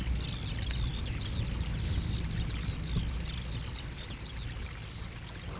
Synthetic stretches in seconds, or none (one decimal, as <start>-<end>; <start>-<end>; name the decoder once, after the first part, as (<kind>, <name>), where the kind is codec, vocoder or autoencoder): none